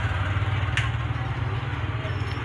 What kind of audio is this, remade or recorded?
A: recorded